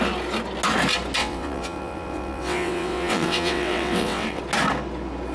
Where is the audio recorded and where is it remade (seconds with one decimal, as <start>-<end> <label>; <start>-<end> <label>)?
0.0-1.2 recorded; 1.2-4.4 remade; 4.4-5.3 recorded